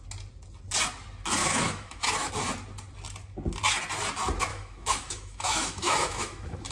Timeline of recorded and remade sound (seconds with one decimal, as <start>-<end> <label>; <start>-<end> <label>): 0.0-1.4 recorded; 1.4-2.3 remade; 2.3-4.5 recorded; 4.5-6.7 remade